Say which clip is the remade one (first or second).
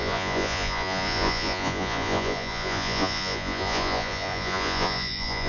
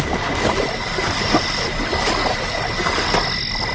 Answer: first